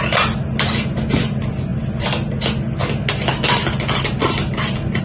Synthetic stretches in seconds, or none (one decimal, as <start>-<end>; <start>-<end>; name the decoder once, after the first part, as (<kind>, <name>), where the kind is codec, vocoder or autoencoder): none